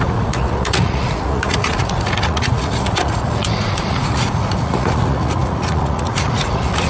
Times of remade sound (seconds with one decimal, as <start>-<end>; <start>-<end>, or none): 0.0-6.9